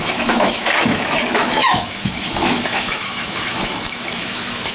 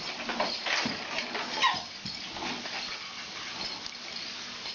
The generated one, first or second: first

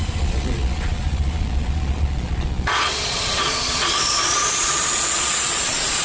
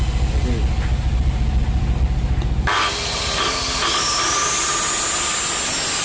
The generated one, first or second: first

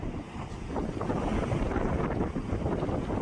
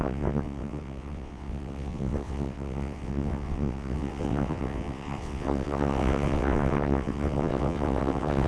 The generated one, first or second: second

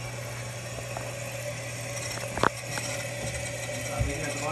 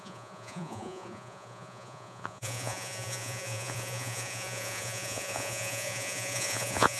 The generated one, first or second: second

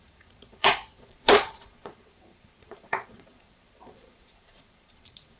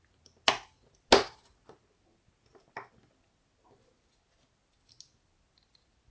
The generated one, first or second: first